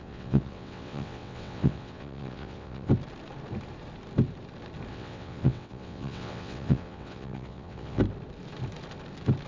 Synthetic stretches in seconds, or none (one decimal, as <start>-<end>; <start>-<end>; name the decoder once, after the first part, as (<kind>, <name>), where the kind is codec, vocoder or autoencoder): 0.0-2.9 (vocoder, WaveNeXt); 4.9-8.0